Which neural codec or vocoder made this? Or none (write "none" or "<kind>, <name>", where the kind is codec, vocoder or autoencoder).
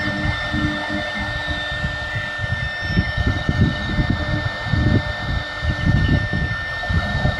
none